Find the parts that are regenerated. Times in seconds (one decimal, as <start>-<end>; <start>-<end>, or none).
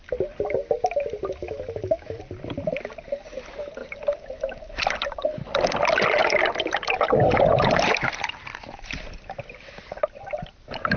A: 1.4-2.2